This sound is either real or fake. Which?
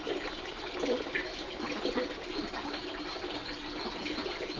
real